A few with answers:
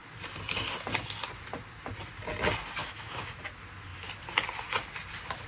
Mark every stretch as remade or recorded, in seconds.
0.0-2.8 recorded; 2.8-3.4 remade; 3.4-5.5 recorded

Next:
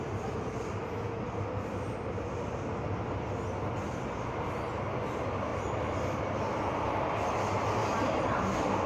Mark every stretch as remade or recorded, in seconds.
0.0-8.9 recorded